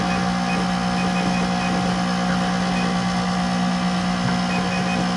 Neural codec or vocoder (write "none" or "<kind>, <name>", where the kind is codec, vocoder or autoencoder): none